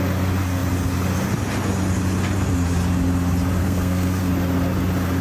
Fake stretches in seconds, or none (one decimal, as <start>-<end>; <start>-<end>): 3.6-4.2